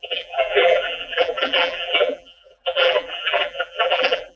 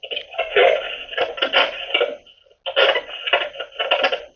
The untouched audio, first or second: second